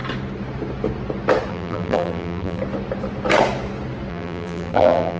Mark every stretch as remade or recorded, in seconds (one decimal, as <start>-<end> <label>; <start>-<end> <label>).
0.0-1.5 recorded; 1.5-2.6 remade; 2.6-4.1 recorded; 4.1-5.2 remade